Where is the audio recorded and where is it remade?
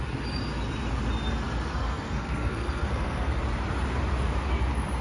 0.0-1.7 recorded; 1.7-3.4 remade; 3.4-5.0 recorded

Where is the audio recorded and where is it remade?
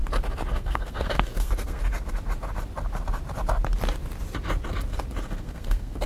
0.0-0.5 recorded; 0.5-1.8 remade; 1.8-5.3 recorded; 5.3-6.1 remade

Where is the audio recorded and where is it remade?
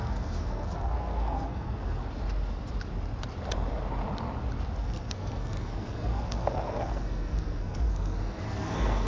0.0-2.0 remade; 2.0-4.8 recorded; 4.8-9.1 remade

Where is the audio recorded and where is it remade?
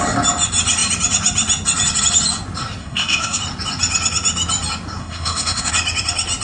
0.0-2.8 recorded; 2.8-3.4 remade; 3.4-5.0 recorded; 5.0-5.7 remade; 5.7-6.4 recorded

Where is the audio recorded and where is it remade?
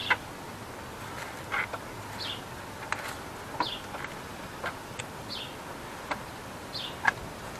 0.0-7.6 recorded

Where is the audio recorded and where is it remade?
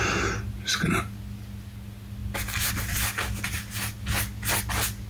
0.0-5.1 recorded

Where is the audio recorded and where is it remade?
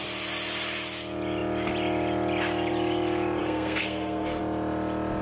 0.0-3.4 recorded; 3.4-4.4 remade; 4.4-5.2 recorded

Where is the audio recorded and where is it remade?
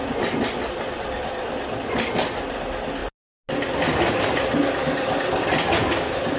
0.0-6.4 recorded